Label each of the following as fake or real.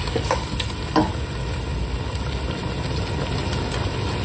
real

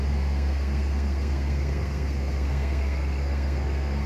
fake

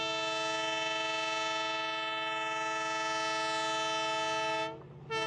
real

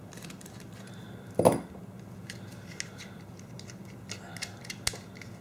real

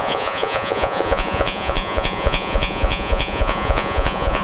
fake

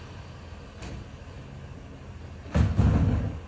real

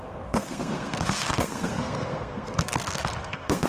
fake